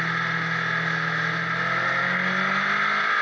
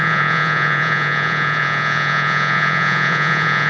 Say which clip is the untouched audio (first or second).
first